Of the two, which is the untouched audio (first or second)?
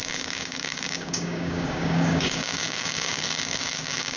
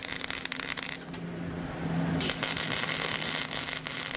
second